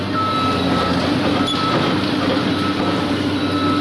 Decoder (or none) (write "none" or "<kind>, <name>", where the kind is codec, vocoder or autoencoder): none